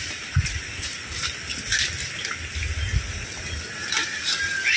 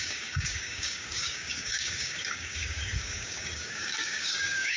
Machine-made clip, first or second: second